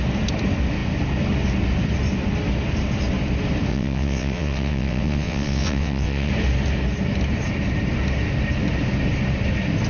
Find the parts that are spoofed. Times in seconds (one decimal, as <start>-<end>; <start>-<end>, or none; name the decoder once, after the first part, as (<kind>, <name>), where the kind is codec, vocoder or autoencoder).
3.7-6.3 (vocoder, WaveNeXt)